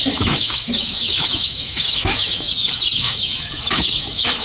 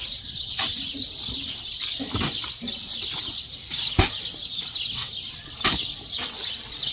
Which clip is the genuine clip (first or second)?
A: second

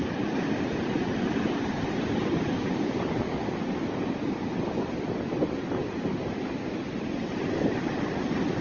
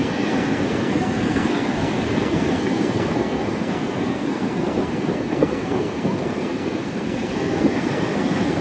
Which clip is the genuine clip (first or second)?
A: first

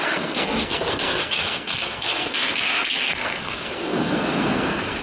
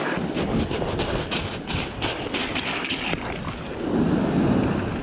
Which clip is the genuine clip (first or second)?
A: second